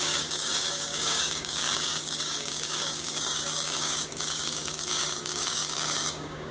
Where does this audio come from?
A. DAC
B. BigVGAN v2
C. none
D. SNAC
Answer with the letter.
A